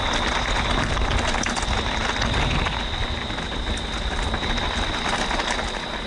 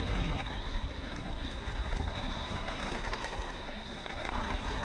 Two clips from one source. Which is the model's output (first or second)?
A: second